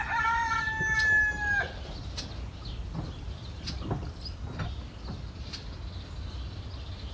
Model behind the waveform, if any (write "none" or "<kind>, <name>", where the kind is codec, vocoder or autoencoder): none